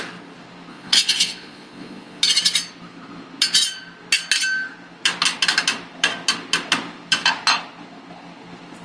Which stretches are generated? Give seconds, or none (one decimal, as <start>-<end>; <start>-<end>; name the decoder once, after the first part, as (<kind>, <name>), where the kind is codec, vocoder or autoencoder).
0.7-2.2 (vocoder, Vocos)